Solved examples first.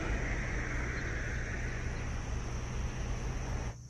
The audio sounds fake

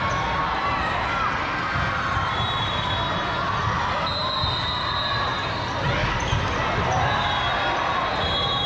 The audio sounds real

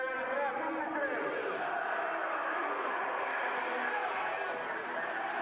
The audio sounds real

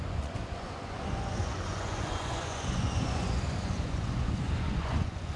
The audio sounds fake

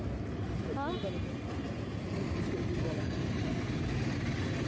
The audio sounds real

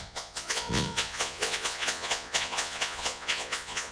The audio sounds fake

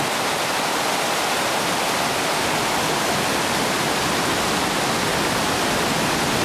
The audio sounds real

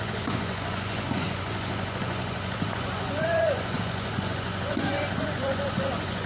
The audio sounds fake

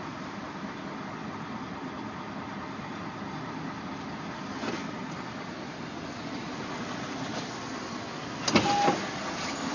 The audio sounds real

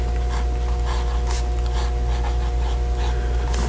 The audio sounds real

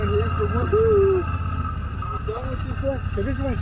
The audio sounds real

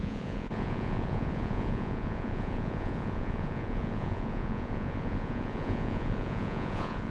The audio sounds fake